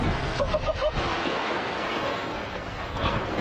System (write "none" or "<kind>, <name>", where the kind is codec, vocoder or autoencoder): codec, SNAC